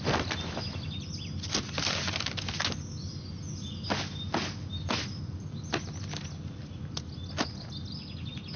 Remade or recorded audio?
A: recorded